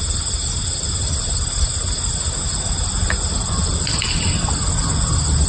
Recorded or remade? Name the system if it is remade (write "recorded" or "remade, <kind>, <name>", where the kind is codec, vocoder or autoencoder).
recorded